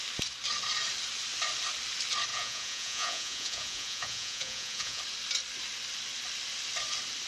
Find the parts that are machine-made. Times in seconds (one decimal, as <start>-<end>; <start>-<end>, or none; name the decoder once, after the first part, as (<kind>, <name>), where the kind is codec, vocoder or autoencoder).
2.3-5.0 (vocoder, Vocos)

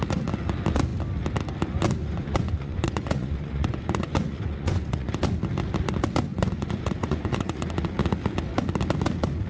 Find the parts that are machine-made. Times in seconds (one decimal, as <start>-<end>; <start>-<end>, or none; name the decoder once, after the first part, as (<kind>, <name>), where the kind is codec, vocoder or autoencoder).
2.0-5.2 (vocoder, Vocos); 6.3-7.7

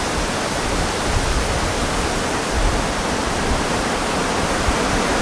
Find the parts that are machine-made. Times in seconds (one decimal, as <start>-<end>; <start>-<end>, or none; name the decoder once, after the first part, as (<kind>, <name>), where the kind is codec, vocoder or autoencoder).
none

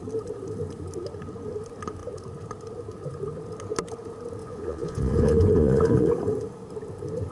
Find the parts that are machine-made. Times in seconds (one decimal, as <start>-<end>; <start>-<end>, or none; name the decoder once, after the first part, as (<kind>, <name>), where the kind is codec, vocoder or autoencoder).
4.4-6.1 (vocoder, Vocos)

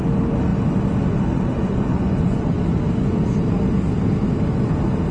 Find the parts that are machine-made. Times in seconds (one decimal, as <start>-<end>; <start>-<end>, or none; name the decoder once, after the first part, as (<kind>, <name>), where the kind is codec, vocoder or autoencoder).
1.5-2.6 (vocoder, Vocos)